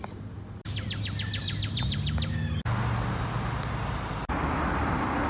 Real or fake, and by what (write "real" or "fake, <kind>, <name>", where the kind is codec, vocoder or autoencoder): real